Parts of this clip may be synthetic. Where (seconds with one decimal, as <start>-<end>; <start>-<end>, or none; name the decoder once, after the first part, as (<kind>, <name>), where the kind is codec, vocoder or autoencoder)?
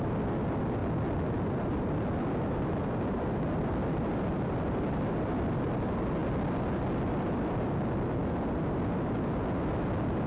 4.3-5.8 (vocoder, BigVGAN v2)